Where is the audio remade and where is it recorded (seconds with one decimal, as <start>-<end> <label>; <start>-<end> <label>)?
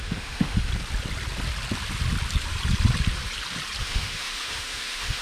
0.0-0.7 remade; 0.7-3.8 recorded; 3.8-5.2 remade